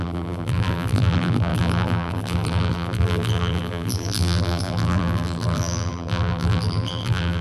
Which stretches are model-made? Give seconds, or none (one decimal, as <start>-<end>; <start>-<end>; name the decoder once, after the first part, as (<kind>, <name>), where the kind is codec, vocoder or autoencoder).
0.0-7.4 (vocoder, BigVGAN v2)